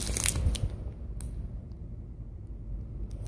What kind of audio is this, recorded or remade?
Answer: recorded